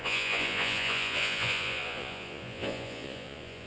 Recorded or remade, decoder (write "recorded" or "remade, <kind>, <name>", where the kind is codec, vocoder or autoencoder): remade, vocoder, Vocos